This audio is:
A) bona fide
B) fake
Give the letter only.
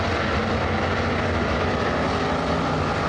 A